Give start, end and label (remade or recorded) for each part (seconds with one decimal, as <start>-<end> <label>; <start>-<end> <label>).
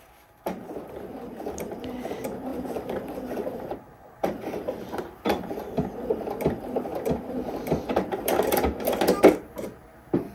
0.0-2.5 recorded; 2.5-5.5 remade; 5.5-10.3 recorded